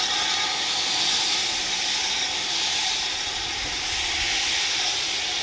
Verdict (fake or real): real